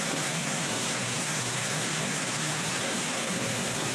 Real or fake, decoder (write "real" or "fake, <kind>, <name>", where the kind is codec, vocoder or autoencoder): fake, codec, SNAC